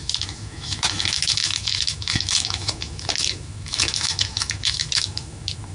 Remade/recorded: remade